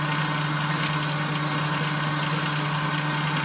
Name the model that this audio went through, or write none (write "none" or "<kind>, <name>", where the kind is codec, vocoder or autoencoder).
none